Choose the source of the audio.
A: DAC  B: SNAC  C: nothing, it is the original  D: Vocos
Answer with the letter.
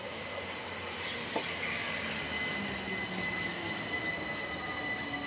C